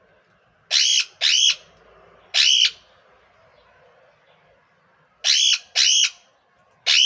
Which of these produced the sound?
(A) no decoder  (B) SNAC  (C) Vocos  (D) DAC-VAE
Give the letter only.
A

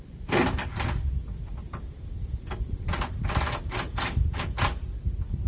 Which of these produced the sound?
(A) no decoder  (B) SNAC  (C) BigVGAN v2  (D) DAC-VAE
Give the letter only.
A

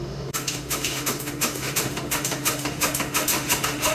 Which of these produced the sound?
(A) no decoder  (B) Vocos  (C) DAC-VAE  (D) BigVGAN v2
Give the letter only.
C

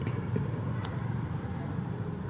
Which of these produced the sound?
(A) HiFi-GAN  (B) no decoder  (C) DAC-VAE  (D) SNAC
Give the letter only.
B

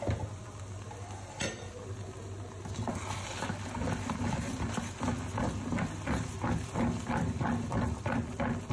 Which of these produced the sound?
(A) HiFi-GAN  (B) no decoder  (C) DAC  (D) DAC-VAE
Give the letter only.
B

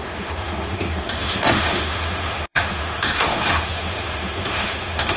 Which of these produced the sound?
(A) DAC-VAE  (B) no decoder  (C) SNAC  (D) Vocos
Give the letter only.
A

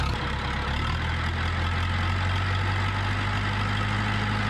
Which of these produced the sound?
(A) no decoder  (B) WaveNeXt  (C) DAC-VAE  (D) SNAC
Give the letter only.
A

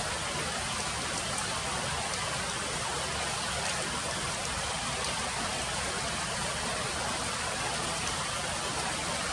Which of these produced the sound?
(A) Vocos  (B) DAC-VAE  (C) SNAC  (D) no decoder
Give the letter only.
D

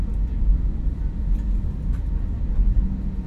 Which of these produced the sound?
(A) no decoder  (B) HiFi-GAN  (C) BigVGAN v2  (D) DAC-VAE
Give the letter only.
A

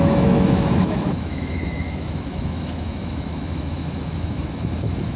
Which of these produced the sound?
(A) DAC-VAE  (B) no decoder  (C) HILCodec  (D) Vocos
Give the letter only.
A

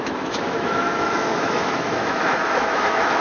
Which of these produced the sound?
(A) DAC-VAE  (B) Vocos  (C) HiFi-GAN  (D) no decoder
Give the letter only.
A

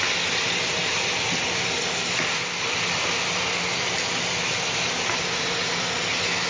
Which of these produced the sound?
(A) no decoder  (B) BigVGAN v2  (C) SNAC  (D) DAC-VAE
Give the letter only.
A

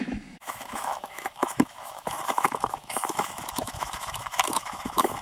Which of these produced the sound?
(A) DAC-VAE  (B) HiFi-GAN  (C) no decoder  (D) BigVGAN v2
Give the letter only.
A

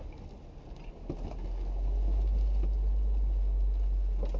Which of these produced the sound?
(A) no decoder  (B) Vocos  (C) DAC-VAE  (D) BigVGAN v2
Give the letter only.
A